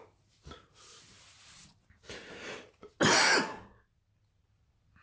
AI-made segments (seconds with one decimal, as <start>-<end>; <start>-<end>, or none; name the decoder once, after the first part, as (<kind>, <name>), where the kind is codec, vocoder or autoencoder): none